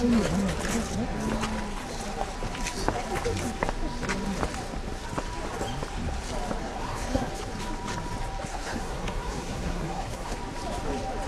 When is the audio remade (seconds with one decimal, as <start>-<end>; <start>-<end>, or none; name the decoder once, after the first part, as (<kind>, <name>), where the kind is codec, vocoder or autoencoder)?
6.6-7.3 (codec, SNAC); 8.5-10.4